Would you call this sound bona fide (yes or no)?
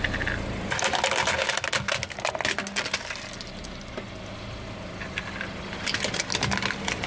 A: yes